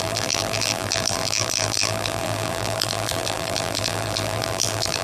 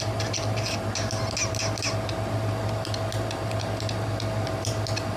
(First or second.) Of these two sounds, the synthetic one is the first